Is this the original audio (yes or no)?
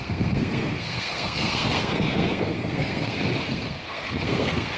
no